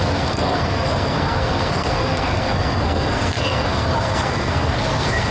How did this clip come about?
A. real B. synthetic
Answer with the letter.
B